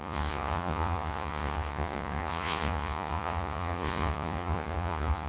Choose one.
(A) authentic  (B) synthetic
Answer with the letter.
B